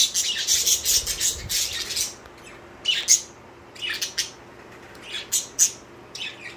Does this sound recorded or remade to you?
recorded